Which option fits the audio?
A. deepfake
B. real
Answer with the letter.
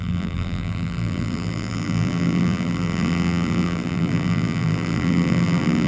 A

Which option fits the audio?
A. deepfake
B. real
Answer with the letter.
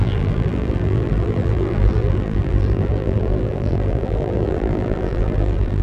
A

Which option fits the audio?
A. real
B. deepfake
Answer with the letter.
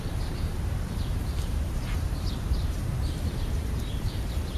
B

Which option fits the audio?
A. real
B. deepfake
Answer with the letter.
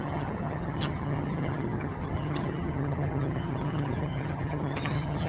B